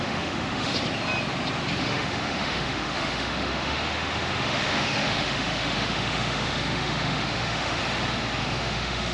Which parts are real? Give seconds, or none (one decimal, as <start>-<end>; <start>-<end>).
0.7-1.8; 7.8-8.4